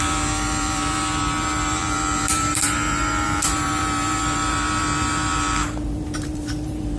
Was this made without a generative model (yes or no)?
no